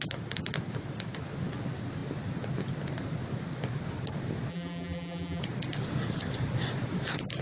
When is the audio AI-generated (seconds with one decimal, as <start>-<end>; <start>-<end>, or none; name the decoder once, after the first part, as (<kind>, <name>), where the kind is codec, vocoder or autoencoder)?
4.5-5.4 (vocoder, BigVGAN v2)